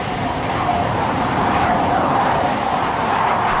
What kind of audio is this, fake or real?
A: fake